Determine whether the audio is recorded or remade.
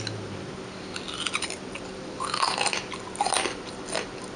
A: recorded